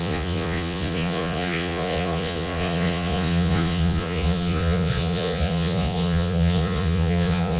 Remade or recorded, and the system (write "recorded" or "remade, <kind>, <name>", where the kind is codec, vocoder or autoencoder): remade, vocoder, Vocos